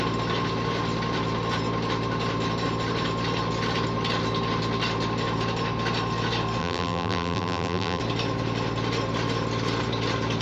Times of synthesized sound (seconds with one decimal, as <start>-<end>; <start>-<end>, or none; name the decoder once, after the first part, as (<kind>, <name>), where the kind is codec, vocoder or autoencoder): 6.6-8.0 (vocoder, BigVGAN v2)